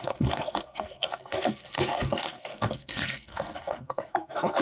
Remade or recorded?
remade